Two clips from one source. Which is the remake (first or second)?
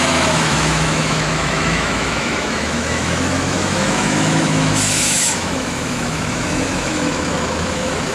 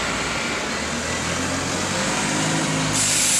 first